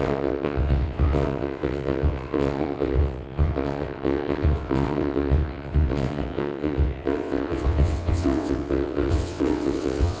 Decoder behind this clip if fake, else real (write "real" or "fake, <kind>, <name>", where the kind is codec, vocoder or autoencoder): fake, vocoder, WaveNeXt